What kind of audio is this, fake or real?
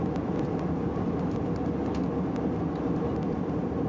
real